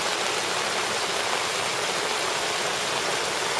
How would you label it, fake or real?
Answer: real